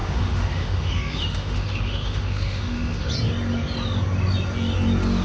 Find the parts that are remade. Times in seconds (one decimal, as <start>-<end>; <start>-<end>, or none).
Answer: 0.0-3.1